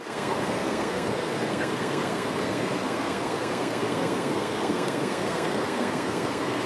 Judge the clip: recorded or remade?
remade